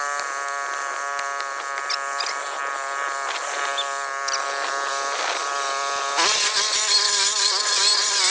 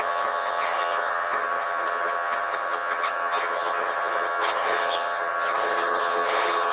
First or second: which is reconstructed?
second